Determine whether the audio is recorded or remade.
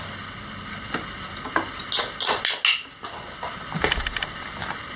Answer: recorded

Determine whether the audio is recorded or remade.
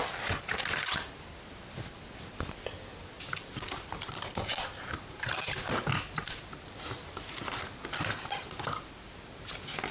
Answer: recorded